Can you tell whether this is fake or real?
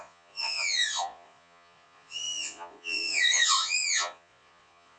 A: fake